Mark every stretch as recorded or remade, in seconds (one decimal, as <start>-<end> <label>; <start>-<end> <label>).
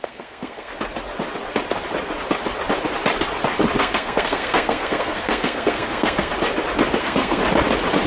0.0-0.7 remade; 0.7-3.8 recorded; 3.8-6.3 remade; 6.3-7.0 recorded; 7.0-7.4 remade; 7.4-8.1 recorded